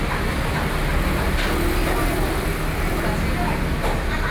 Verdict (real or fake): real